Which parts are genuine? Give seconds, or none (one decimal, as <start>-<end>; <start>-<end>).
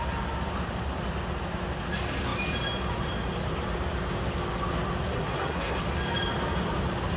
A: 0.0-5.1; 5.8-7.2